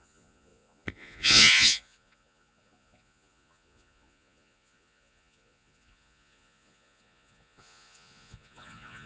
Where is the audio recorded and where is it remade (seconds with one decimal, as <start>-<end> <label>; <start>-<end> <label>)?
0.0-9.1 remade